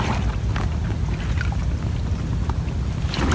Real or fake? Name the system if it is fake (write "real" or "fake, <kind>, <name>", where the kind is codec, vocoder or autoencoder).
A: real